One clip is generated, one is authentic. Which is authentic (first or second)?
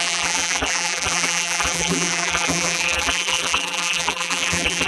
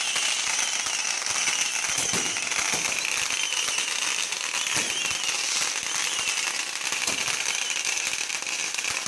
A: second